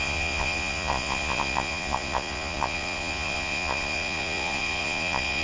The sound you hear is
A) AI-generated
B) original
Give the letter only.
A